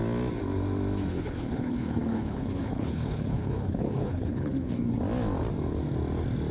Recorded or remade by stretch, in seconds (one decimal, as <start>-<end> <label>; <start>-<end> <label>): 0.0-1.1 recorded; 1.1-5.0 remade; 5.0-6.5 recorded